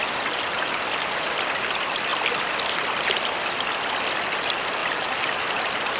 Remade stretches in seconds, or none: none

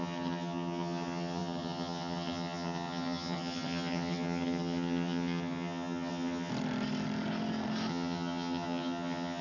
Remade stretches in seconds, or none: 0.0-6.5; 7.9-9.4